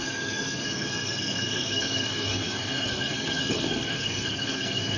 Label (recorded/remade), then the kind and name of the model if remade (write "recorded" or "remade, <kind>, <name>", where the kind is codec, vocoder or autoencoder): remade, codec, SNAC